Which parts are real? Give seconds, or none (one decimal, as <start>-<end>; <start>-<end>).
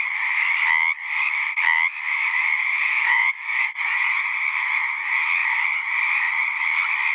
0.0-2.8; 4.4-7.1